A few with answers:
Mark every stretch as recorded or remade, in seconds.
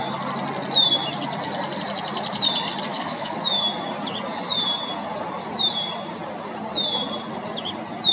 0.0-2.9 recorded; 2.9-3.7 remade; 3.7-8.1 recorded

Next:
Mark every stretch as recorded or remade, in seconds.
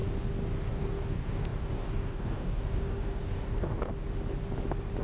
0.0-0.7 recorded; 0.7-3.9 remade; 3.9-5.0 recorded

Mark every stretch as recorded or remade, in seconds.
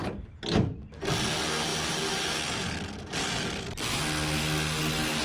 0.0-5.2 recorded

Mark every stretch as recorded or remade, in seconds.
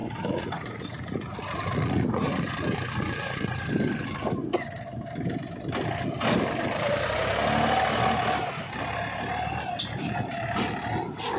0.0-3.6 remade; 3.6-11.4 recorded